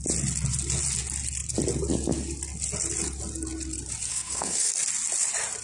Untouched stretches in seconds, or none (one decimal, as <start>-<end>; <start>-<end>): 0.0-4.1; 4.7-5.6